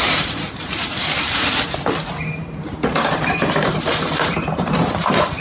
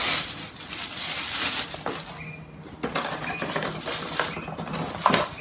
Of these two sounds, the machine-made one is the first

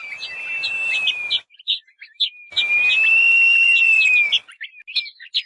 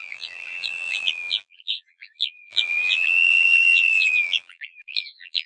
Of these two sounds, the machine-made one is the second